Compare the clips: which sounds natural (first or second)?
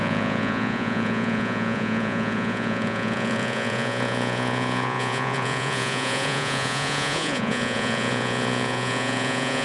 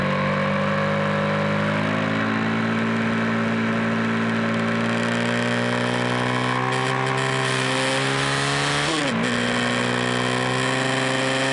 second